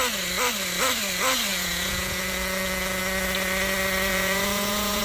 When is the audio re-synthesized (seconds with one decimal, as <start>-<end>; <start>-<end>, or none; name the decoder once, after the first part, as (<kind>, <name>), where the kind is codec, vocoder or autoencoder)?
1.5-3.0 (vocoder, Vocos); 4.1-5.0